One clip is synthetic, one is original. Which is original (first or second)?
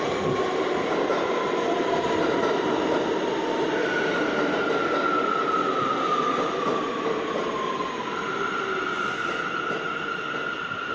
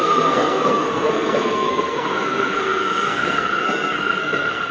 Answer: first